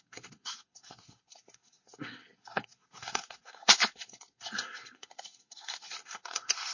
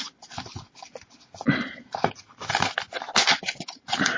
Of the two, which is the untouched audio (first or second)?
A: second